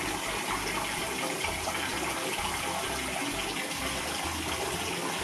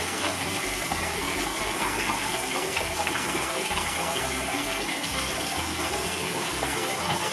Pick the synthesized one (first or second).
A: second